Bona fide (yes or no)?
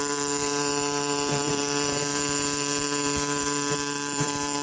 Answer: no